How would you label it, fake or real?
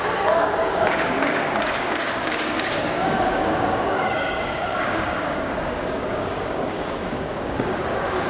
fake